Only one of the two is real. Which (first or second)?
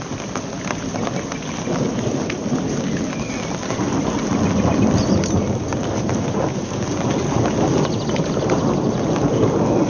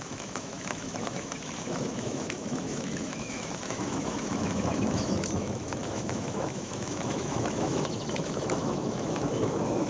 first